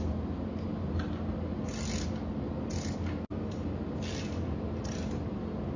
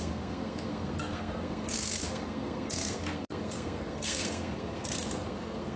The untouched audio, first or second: first